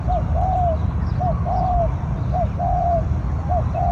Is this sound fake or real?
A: real